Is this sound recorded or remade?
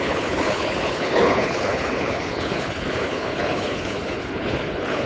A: remade